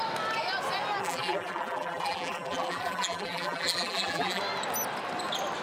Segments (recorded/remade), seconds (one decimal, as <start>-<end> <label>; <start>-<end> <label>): 0.0-1.0 recorded; 1.0-4.4 remade; 4.4-5.6 recorded